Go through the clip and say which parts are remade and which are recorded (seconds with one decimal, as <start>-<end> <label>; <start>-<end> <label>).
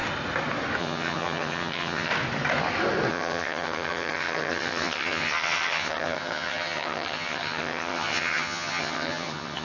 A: 0.0-0.8 recorded; 0.8-2.1 remade; 2.1-3.1 recorded; 3.1-9.6 remade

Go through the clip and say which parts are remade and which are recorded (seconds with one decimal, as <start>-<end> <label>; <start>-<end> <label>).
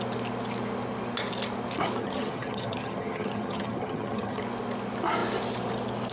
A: 0.0-2.0 recorded; 2.0-4.4 remade; 4.4-6.1 recorded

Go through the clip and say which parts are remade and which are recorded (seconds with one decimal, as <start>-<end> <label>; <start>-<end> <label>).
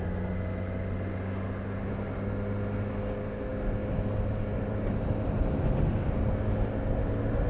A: 0.0-7.5 recorded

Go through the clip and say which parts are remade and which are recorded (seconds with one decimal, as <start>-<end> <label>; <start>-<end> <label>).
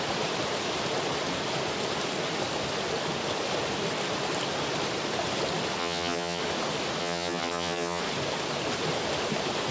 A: 0.0-5.8 recorded; 5.8-6.4 remade; 6.4-7.0 recorded; 7.0-8.0 remade; 8.0-9.7 recorded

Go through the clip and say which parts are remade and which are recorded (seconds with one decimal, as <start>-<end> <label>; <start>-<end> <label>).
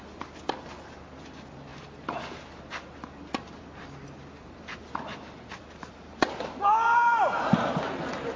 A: 0.0-8.4 recorded